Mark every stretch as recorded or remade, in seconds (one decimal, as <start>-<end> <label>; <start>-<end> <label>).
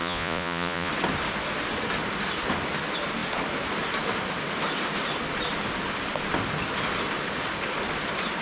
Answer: 0.0-0.9 remade; 0.9-8.4 recorded